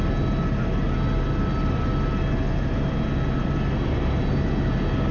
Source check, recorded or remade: recorded